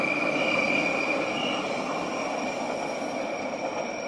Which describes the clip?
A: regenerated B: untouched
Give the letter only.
B